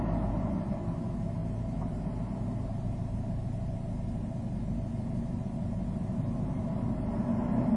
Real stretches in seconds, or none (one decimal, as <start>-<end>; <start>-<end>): 0.0-7.8